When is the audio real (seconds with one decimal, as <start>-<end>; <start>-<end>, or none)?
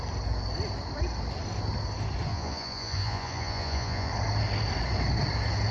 0.0-2.3; 4.1-5.7